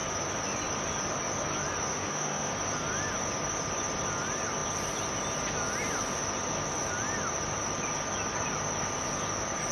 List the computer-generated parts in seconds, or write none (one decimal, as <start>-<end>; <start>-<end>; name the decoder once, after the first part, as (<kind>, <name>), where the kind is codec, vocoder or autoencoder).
1.9-2.5 (autoencoder, DAC-VAE)